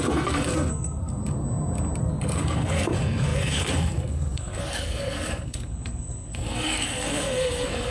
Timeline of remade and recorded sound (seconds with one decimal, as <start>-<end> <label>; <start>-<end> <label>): 0.0-1.2 remade; 1.2-2.0 recorded; 2.0-7.9 remade